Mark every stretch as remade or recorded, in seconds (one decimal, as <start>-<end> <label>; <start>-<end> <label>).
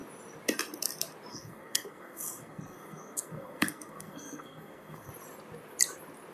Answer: 0.0-1.3 recorded; 1.3-5.1 remade; 5.1-6.3 recorded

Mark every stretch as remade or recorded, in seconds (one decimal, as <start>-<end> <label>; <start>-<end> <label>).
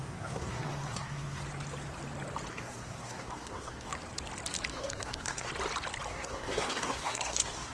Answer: 0.0-1.4 remade; 1.4-2.5 recorded; 2.5-3.9 remade; 3.9-4.7 recorded; 4.7-5.5 remade; 5.5-6.1 recorded; 6.1-7.7 remade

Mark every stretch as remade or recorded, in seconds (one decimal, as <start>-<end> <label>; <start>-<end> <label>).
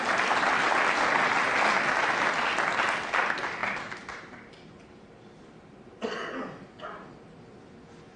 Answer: 0.0-8.2 recorded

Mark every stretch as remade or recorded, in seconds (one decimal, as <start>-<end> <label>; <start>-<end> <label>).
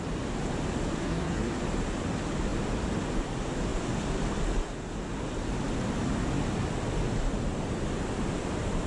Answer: 0.0-1.0 recorded; 1.0-1.6 remade; 1.6-8.9 recorded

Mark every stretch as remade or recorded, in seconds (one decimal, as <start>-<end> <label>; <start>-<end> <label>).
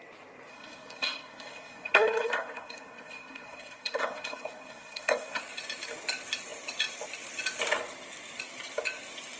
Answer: 0.0-0.5 recorded; 0.5-5.4 remade; 5.4-9.4 recorded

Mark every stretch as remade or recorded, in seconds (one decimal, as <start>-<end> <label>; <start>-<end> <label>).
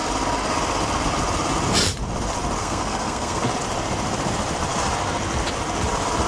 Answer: 0.0-2.6 recorded; 2.6-3.4 remade; 3.4-6.3 recorded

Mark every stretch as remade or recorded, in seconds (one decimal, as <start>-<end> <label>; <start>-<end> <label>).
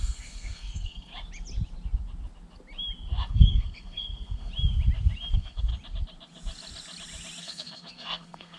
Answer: 0.0-1.1 remade; 1.1-3.3 recorded; 3.3-4.5 remade; 4.5-5.3 recorded; 5.3-5.7 remade; 5.7-7.4 recorded; 7.4-8.6 remade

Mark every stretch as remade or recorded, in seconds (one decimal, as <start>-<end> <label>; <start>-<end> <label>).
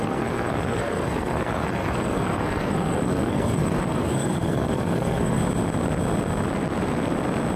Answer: 0.0-5.4 remade; 5.4-7.6 recorded